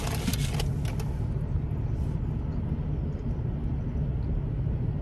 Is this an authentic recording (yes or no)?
yes